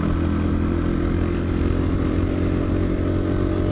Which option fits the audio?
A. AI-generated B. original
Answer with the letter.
B